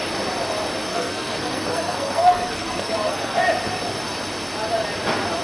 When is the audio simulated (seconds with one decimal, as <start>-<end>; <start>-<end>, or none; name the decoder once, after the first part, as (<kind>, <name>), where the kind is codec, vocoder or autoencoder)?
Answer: 0.9-3.4 (codec, SNAC)